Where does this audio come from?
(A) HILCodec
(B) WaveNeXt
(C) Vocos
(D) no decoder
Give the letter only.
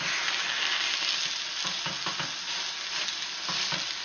D